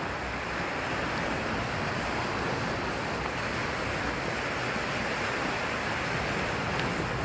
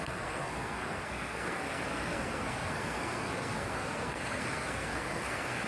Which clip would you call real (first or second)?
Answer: first